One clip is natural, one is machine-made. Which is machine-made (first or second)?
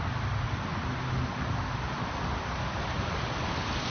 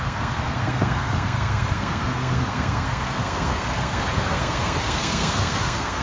second